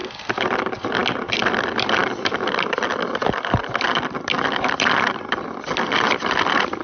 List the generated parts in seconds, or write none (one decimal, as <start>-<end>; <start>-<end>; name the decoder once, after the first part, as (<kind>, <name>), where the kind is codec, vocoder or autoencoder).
none